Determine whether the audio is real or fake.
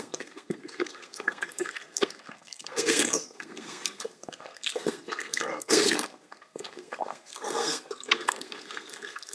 fake